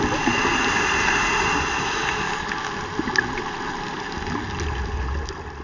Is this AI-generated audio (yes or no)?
no